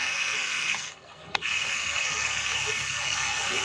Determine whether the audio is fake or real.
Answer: fake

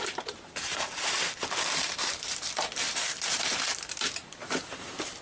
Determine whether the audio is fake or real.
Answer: fake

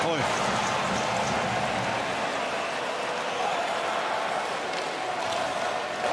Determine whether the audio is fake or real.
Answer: real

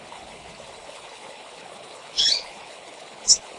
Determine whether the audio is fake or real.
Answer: fake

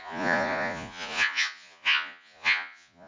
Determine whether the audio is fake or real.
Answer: fake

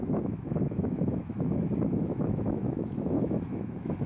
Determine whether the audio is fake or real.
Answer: fake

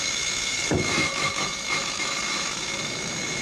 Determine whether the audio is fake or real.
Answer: fake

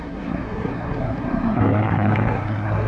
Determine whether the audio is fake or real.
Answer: fake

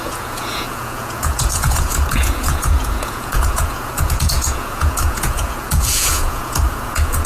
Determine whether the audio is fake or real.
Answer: fake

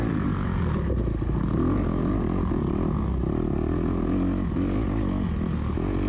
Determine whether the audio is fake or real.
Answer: real